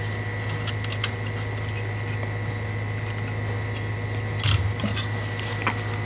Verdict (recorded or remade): recorded